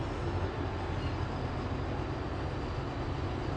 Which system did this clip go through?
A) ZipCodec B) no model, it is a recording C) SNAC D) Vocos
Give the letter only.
B